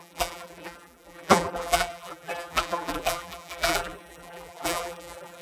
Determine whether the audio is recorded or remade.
remade